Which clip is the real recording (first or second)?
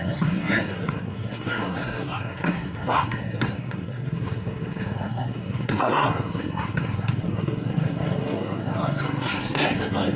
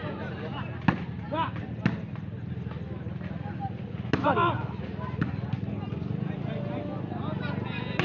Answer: second